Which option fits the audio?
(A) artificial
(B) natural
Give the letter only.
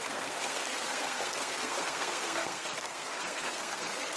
A